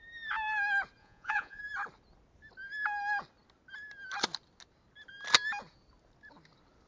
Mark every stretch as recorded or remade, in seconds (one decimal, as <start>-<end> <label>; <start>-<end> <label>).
0.0-1.0 recorded; 1.0-1.6 remade; 1.6-6.9 recorded

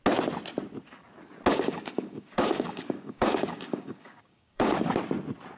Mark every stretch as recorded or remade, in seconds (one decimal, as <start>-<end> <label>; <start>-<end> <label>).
0.0-1.5 recorded; 1.5-4.9 remade; 4.9-5.6 recorded

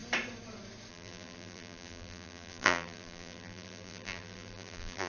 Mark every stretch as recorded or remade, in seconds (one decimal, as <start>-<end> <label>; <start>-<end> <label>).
0.0-0.9 recorded; 0.9-5.1 remade

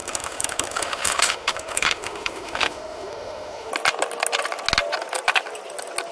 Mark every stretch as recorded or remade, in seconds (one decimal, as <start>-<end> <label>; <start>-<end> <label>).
0.0-3.7 remade; 3.7-6.1 recorded